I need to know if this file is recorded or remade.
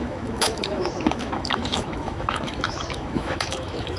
remade